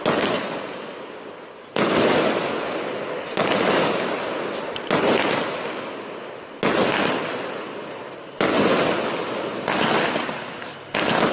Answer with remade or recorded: recorded